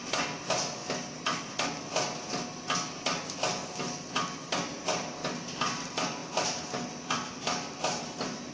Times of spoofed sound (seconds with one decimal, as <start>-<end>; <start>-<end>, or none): 0.0-0.8; 1.4-2.3; 4.6-8.5